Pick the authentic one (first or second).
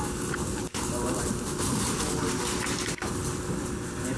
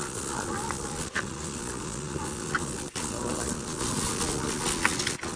first